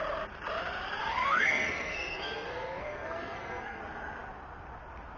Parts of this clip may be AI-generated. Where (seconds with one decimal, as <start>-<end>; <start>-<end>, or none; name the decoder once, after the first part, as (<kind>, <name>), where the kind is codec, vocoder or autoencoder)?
1.0-3.8 (codec, SNAC)